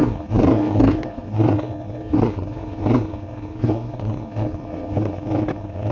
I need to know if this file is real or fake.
fake